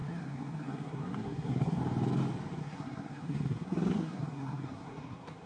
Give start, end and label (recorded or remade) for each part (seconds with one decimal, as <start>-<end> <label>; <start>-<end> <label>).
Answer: 0.0-1.8 remade; 1.8-2.6 recorded; 2.6-5.5 remade